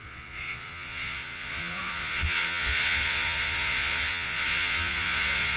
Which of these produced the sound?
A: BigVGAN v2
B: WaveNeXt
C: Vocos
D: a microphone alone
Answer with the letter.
C